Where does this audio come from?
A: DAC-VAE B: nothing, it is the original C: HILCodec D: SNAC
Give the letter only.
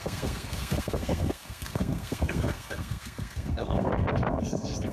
D